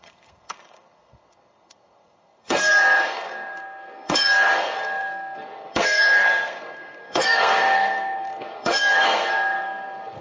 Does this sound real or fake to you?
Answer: fake